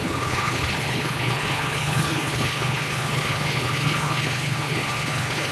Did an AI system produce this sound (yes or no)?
yes